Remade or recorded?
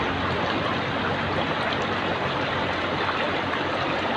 recorded